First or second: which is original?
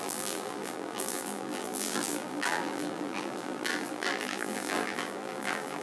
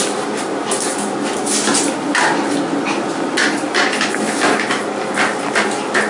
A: second